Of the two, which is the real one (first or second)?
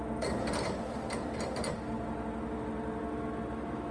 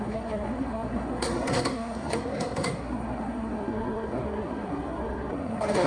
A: first